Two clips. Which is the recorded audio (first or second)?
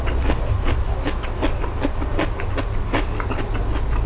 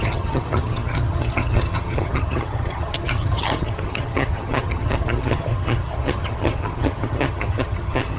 first